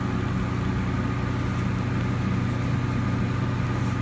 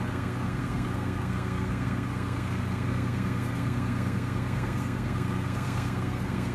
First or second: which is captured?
first